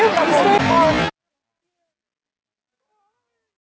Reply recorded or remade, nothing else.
recorded